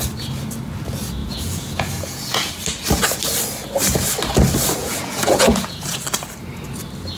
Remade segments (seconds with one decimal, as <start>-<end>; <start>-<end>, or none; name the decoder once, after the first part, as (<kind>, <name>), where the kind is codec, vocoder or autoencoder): 1.2-2.5 (vocoder, Vocos); 4.8-6.0

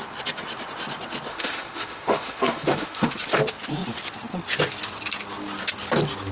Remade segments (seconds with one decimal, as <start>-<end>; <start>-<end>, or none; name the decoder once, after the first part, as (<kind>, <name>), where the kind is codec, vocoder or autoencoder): 1.3-3.1 (autoencoder, DAC-VAE)